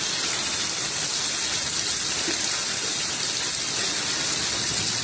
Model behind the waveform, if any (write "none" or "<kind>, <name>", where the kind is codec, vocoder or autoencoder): none